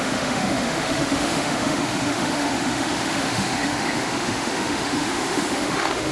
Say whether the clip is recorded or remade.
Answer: remade